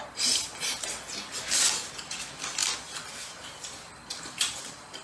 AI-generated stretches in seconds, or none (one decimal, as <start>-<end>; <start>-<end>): none